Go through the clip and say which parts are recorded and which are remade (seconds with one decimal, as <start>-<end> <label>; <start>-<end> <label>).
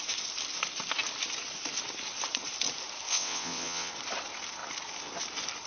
0.0-3.1 recorded; 3.1-3.9 remade; 3.9-5.7 recorded